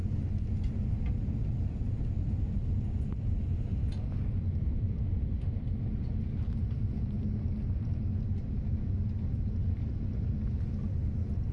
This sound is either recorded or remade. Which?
recorded